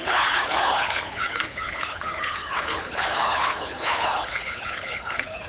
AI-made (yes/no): yes